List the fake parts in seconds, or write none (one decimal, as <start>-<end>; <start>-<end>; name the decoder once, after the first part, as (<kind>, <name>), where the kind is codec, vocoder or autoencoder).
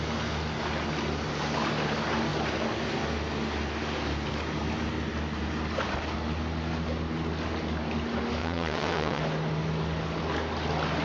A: 8.4-9.2 (vocoder, WaveNeXt)